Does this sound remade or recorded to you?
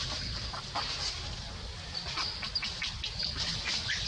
recorded